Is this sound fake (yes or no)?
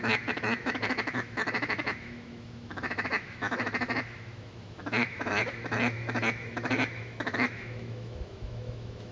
yes